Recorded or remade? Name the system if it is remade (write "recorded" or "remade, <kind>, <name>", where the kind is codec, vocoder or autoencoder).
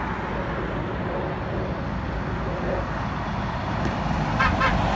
recorded